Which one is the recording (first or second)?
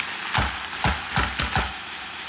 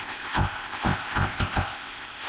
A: first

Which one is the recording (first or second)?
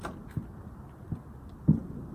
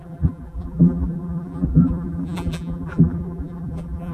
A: first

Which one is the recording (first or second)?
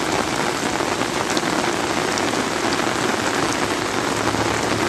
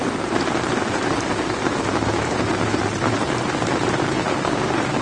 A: first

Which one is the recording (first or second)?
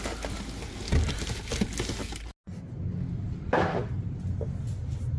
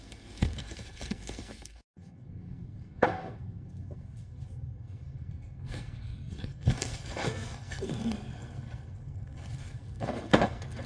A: first